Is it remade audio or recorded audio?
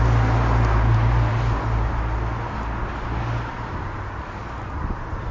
recorded